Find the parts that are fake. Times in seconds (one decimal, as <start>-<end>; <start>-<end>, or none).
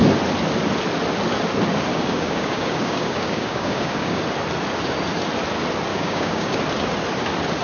1.9-4.2; 5.9-6.6